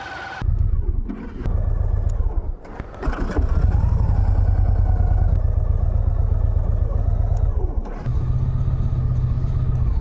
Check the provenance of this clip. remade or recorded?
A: recorded